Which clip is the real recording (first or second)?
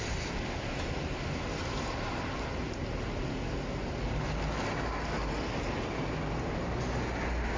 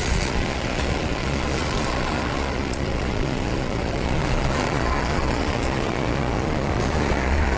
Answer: first